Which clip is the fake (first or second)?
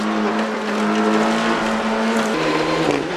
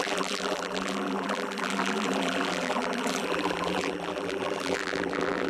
second